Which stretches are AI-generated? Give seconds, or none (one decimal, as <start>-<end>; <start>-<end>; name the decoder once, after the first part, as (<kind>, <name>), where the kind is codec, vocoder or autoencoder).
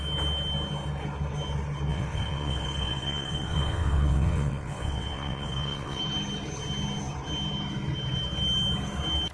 1.9-6.0 (vocoder, WaveNeXt)